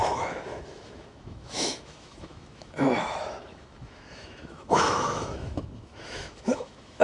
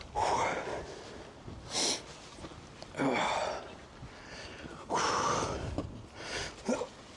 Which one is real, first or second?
second